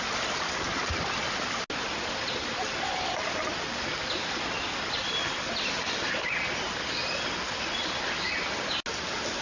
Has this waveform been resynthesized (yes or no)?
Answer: no